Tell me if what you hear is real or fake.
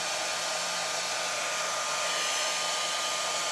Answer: real